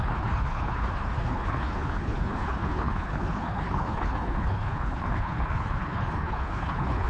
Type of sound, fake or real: fake